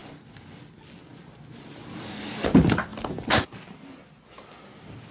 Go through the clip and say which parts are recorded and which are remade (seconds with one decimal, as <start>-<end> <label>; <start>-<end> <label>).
0.0-5.1 recorded

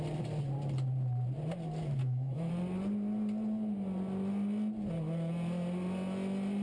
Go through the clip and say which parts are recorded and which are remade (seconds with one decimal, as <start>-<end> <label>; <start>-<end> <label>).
0.0-2.0 recorded; 2.0-2.5 remade; 2.5-6.6 recorded

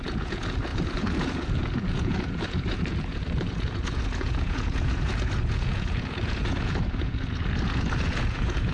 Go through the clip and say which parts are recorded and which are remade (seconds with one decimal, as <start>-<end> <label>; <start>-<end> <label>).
0.0-8.7 remade

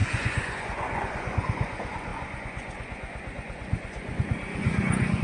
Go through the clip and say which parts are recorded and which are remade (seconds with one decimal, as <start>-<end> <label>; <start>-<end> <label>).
0.0-5.2 remade

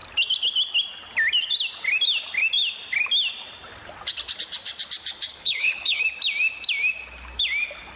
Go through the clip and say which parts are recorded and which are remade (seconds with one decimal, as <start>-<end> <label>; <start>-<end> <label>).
0.0-5.3 recorded; 5.3-6.0 remade; 6.0-8.0 recorded

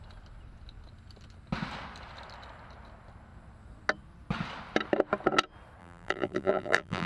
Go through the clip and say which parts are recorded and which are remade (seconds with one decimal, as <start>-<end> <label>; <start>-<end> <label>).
0.0-5.8 recorded; 5.8-7.1 remade